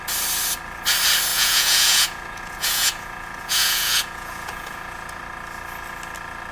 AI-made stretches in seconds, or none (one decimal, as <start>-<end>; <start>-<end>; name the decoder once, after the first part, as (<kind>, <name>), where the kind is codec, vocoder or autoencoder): 1.3-5.2 (vocoder, Vocos)